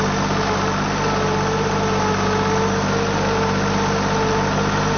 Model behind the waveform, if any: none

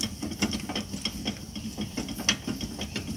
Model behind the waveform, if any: none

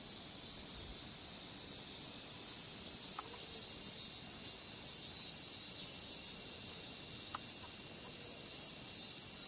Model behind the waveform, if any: none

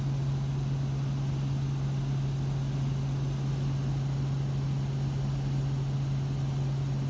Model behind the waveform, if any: none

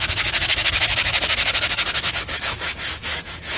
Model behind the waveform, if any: autoencoder, DAC-VAE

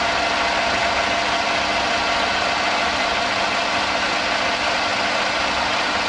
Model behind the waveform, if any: none